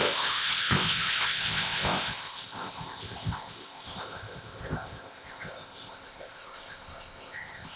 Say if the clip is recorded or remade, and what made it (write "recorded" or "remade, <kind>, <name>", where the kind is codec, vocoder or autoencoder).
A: remade, codec, ZipCodec